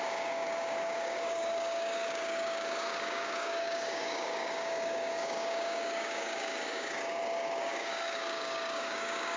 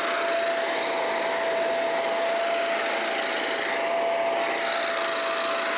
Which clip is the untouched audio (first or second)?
second